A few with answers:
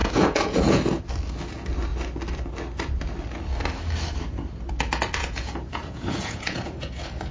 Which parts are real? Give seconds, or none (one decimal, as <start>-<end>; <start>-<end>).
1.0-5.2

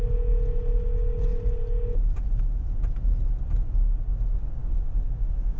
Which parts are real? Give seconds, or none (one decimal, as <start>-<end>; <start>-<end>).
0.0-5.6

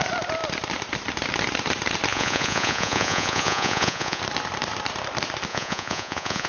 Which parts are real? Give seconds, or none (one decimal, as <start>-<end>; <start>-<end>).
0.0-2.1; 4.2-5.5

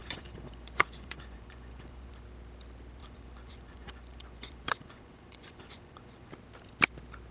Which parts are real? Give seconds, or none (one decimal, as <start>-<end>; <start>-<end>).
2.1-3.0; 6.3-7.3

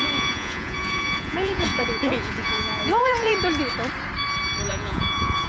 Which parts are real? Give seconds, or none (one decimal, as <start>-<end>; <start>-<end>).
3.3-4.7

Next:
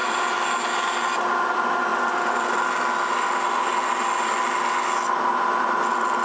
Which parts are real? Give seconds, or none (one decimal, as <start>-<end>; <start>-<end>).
0.0-6.2

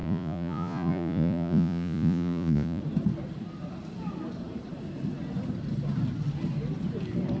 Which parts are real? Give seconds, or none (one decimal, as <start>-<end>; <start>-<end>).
2.8-7.4

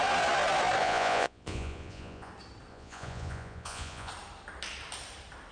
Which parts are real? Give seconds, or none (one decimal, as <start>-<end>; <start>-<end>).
0.0-0.8; 2.3-2.7; 4.1-5.5